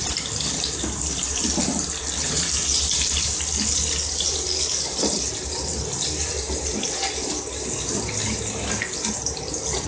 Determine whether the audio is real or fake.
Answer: real